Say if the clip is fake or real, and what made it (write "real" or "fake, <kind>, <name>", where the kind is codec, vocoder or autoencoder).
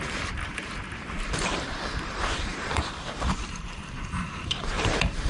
fake, vocoder, BigVGAN v2